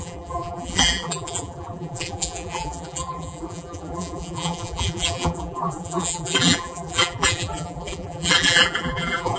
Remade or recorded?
remade